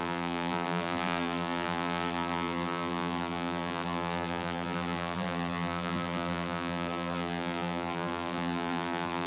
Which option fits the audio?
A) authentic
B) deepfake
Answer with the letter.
B